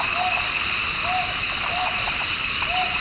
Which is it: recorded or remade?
recorded